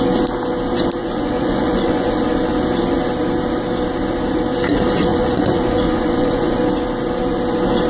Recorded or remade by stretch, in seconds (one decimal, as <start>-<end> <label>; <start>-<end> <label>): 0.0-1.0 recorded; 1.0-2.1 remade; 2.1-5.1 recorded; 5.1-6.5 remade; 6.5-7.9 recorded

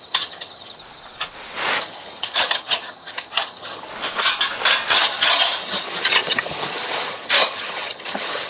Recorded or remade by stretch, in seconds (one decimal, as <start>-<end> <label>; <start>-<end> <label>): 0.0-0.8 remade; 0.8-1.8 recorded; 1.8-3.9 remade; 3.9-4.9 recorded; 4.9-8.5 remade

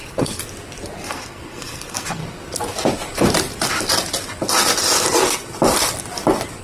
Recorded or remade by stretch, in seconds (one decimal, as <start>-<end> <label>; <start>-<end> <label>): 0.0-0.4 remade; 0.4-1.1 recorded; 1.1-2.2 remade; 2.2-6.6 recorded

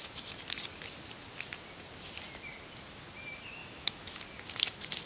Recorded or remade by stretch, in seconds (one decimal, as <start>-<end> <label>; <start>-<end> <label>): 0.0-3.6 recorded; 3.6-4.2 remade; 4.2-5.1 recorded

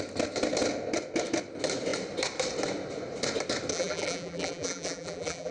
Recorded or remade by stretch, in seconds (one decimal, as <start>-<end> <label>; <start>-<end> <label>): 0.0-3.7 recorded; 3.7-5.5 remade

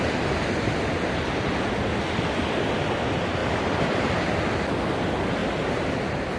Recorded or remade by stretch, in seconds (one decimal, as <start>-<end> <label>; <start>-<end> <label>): 0.0-3.4 recorded; 3.4-4.3 remade; 4.3-5.4 recorded; 5.4-6.0 remade; 6.0-6.4 recorded